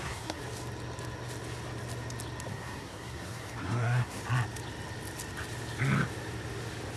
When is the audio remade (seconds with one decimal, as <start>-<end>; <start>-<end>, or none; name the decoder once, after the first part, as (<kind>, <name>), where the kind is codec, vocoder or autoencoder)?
0.0-0.4 (codec, SNAC); 2.5-4.2